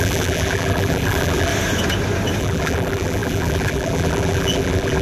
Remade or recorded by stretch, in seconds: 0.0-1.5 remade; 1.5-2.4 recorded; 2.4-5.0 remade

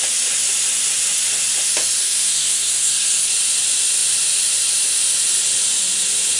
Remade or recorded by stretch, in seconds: 0.0-2.0 recorded; 2.0-3.3 remade; 3.3-6.4 recorded

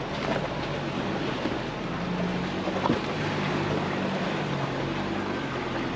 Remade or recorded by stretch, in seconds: 0.0-6.0 recorded

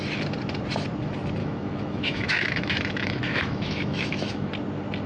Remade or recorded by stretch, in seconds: 0.0-1.4 recorded; 1.4-4.5 remade; 4.5-5.1 recorded